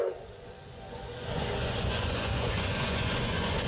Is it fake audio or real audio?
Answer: fake